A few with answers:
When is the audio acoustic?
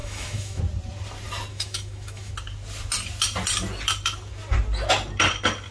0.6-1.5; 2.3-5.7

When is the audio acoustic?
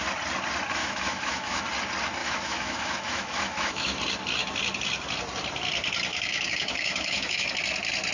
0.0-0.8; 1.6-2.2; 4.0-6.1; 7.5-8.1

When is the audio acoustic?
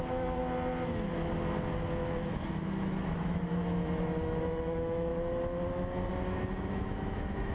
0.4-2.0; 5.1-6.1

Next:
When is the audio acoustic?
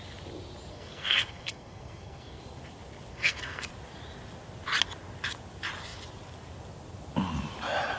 0.0-0.7; 2.4-3.1; 3.7-8.0